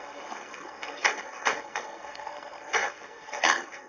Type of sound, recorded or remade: remade